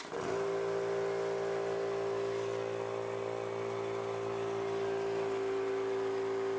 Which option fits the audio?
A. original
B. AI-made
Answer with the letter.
A